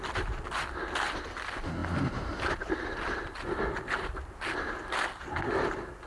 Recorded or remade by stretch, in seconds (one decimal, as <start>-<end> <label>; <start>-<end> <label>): 0.0-6.1 recorded